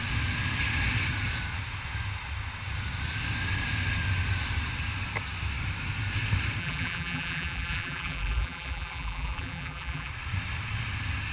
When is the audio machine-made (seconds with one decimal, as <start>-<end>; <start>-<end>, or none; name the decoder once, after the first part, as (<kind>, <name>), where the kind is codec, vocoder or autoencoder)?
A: 6.6-10.1 (vocoder, BigVGAN v2)